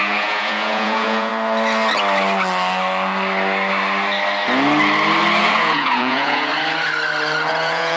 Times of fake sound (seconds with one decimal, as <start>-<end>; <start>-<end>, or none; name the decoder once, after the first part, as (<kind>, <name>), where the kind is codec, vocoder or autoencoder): 0.0-1.3 (vocoder, Vocos); 5.4-6.5; 7.5-8.0